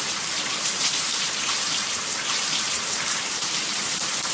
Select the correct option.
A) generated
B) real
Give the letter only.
A